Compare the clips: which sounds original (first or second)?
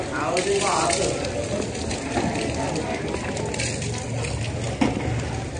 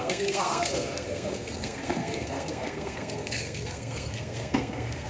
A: first